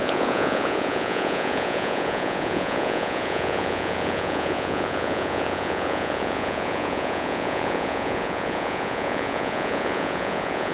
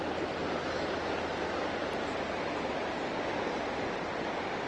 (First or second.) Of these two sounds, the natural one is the second